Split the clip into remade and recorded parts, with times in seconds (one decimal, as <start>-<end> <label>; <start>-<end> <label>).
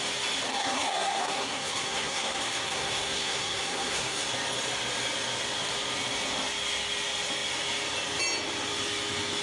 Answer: 0.0-0.5 recorded; 0.5-4.3 remade; 4.3-9.4 recorded